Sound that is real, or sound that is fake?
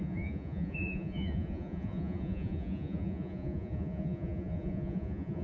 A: fake